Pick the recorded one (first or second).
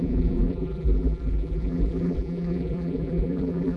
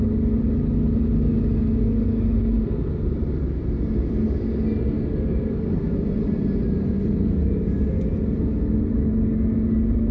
second